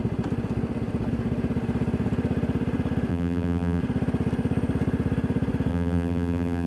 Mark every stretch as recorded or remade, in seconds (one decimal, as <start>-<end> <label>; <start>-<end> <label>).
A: 0.0-3.1 recorded; 3.1-3.8 remade; 3.8-5.7 recorded; 5.7-6.7 remade